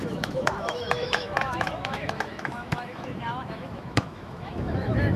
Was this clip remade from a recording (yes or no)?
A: yes